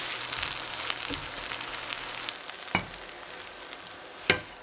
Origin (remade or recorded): recorded